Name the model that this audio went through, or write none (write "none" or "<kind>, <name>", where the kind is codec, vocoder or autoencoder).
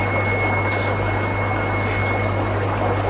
none